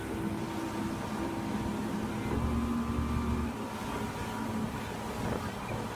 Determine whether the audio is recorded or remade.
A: recorded